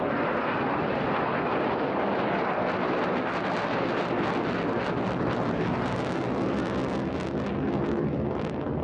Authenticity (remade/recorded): recorded